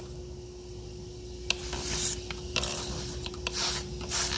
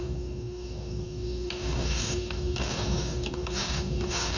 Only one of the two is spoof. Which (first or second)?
second